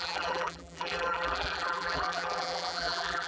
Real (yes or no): no